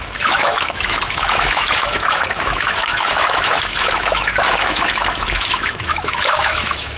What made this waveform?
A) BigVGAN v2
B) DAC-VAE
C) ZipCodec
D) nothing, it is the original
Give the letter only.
B